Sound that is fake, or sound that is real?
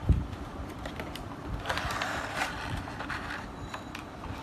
fake